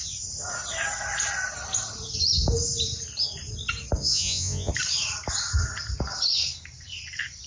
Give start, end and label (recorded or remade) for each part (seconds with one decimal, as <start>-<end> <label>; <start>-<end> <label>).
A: 0.0-4.0 recorded; 4.0-4.7 remade; 4.7-7.5 recorded

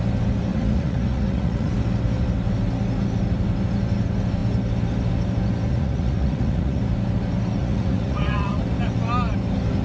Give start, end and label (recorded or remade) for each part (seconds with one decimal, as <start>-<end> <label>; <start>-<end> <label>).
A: 0.0-0.5 recorded; 0.5-1.7 remade; 1.7-5.7 recorded; 5.7-6.8 remade; 6.8-7.6 recorded; 7.6-8.6 remade; 8.6-9.8 recorded

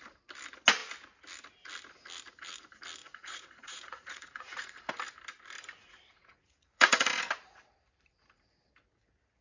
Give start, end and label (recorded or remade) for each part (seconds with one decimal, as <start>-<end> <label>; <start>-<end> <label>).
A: 0.0-3.0 recorded; 3.0-4.8 remade; 4.8-5.8 recorded; 5.8-7.1 remade; 7.1-9.4 recorded

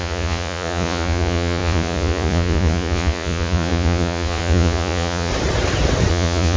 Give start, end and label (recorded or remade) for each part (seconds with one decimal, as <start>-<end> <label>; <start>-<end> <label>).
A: 0.0-5.3 remade; 5.3-6.1 recorded; 6.1-6.6 remade